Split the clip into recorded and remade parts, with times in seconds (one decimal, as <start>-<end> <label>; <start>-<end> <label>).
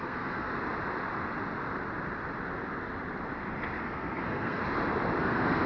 0.0-0.5 remade; 0.5-3.8 recorded; 3.8-4.6 remade; 4.6-5.2 recorded; 5.2-5.7 remade